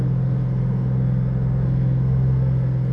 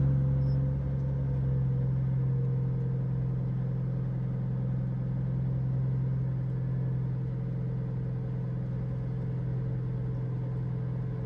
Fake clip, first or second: first